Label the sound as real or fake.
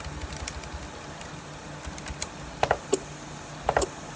real